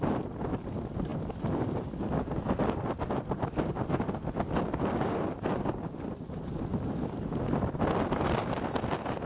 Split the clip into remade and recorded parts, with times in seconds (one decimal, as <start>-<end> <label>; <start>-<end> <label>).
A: 0.0-9.3 recorded